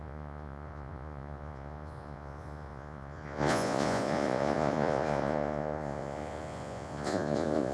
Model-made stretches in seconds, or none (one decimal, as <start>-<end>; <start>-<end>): 0.0-7.7